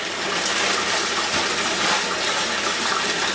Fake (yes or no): no